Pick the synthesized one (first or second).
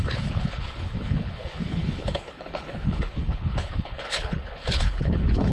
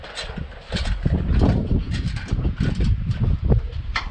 first